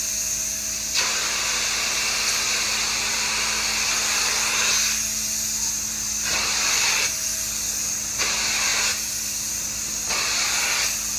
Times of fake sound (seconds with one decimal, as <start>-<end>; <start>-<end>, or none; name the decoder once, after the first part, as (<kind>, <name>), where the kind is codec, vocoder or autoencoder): none